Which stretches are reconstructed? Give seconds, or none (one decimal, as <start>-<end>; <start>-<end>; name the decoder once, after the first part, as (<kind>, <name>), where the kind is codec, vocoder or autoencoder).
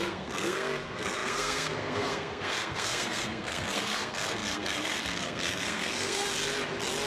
0.0-6.3 (codec, SNAC)